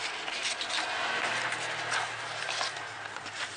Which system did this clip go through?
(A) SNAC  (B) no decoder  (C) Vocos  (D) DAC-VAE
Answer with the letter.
B